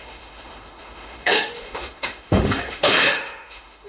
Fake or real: fake